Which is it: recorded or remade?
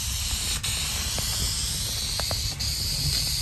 recorded